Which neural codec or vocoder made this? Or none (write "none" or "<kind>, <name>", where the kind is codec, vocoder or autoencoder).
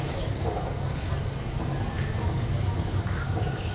codec, DAC